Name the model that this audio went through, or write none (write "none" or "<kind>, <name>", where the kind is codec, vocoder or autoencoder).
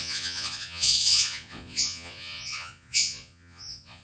vocoder, Vocos